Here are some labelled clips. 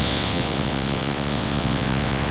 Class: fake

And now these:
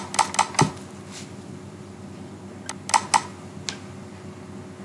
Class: real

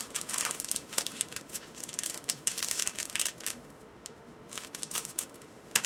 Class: fake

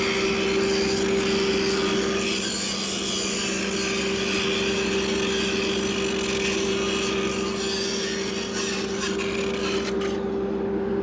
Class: real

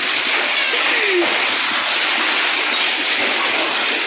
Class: real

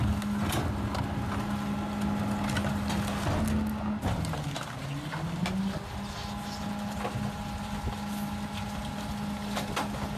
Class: real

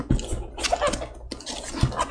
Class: real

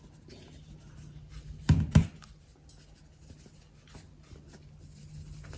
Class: real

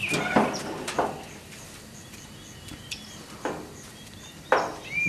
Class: real